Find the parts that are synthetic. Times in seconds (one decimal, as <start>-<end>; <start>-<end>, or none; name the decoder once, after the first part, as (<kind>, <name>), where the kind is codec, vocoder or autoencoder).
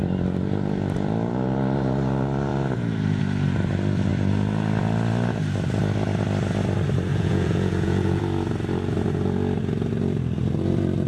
7.1-8.2 (vocoder, Vocos)